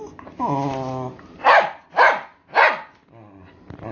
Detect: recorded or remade recorded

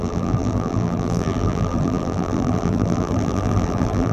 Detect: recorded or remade remade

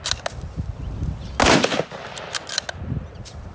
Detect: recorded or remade recorded